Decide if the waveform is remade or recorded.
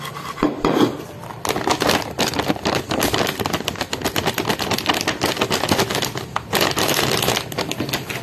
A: recorded